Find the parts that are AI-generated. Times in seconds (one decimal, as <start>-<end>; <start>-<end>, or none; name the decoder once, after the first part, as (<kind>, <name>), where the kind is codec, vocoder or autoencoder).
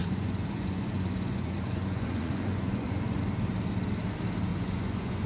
0.0-3.2 (vocoder, Vocos); 4.5-5.3